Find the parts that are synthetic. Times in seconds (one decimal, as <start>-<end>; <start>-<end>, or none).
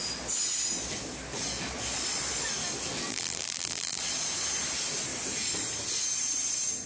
3.1-4.0